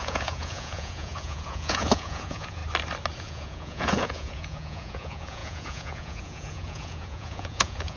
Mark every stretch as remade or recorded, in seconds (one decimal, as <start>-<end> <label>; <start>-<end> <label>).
0.0-2.6 remade; 2.6-3.2 recorded; 3.2-8.0 remade